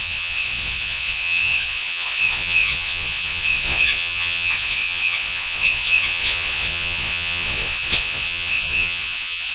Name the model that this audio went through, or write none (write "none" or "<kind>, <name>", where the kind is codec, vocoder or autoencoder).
vocoder, Vocos